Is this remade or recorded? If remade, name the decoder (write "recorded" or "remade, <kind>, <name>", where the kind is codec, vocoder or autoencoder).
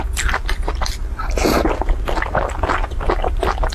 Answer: recorded